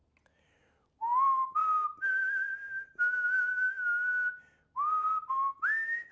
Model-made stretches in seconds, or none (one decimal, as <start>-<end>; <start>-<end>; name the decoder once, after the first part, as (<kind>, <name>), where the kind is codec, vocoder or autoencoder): none